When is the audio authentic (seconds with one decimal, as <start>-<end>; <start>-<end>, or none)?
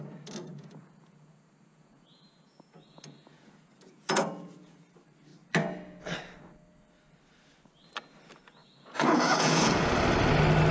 0.0-0.5; 4.8-8.6; 9.9-10.7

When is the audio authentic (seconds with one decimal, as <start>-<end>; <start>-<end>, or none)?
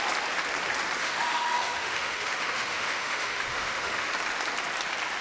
0.0-1.0; 4.1-5.2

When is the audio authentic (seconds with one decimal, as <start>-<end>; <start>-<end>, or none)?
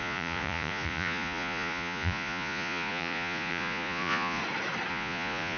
4.4-4.9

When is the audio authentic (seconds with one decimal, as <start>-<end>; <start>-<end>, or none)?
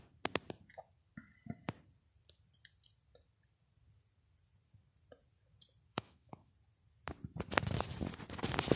0.0-5.9; 6.5-8.8